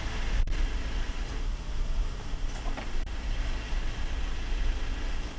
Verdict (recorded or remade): recorded